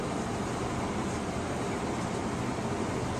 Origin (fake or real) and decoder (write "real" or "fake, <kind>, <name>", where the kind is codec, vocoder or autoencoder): real